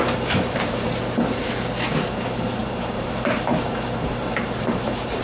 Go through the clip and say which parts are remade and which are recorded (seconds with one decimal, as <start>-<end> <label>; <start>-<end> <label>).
0.0-1.0 remade; 1.0-2.6 recorded; 2.6-5.2 remade